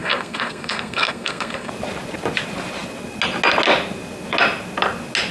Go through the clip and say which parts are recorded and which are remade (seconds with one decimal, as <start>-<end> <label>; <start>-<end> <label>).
0.0-1.7 remade; 1.7-5.3 recorded